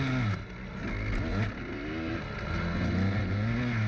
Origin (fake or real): real